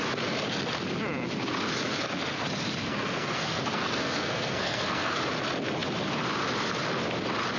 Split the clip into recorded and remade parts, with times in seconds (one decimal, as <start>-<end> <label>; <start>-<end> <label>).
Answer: 0.0-2.8 recorded; 2.8-5.2 remade; 5.2-7.6 recorded